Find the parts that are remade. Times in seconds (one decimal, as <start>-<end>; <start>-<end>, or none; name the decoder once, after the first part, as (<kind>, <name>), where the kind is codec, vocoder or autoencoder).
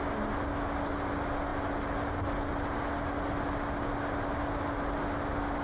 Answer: none